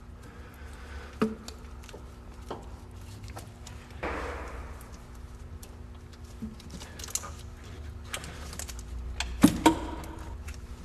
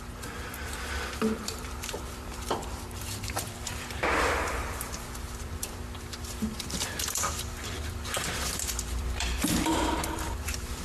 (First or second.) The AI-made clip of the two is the second